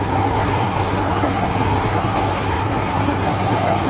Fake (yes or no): yes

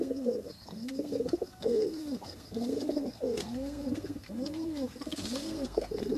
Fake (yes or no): yes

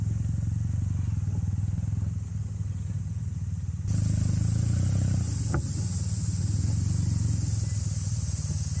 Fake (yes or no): no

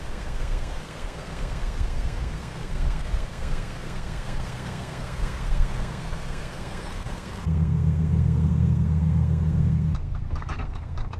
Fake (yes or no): yes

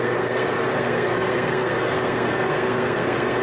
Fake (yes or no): yes